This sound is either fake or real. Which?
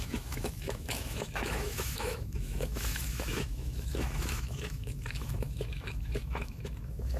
fake